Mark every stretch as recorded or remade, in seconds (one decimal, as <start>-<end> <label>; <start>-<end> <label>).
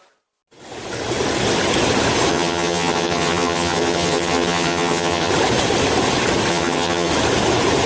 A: 0.0-2.3 recorded; 2.3-5.3 remade; 5.3-6.5 recorded; 6.5-7.1 remade; 7.1-7.9 recorded